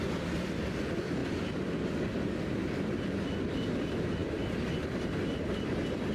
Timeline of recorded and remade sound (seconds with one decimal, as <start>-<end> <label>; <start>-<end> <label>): 0.0-6.1 recorded